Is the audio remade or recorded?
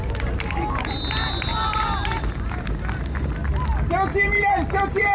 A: recorded